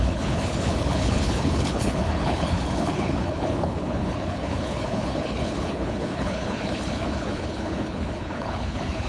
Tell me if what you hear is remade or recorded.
remade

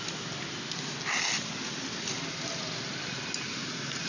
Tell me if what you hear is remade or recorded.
recorded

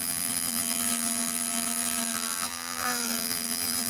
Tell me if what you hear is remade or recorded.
remade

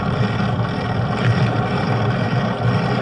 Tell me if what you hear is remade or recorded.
recorded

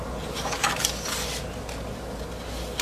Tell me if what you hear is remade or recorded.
recorded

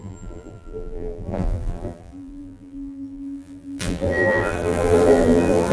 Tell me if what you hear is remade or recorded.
remade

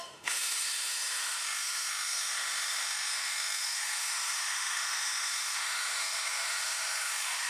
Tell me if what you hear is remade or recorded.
remade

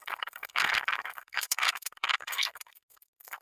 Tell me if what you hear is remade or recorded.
remade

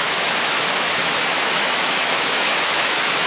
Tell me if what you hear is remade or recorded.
remade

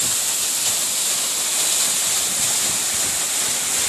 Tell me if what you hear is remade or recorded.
recorded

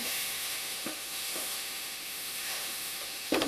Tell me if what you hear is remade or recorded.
remade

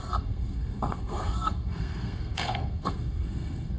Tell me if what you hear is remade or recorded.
remade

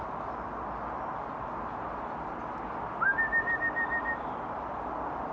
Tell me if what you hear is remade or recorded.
recorded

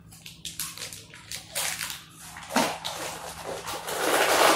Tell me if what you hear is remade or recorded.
recorded